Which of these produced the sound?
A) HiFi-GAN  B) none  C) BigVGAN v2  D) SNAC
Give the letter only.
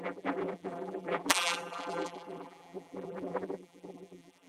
C